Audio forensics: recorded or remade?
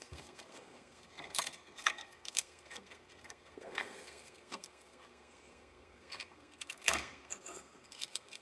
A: remade